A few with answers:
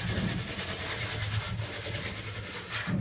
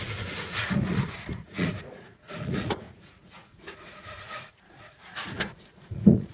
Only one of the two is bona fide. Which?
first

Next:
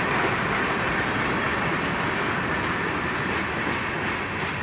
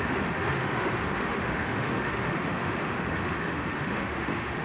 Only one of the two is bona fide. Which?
first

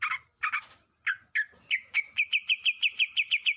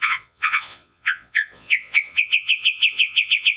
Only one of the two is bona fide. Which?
first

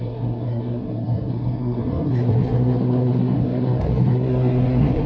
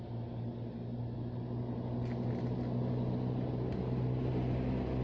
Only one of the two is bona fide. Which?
second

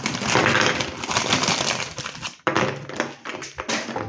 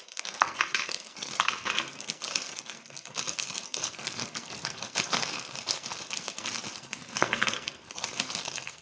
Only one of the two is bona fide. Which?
first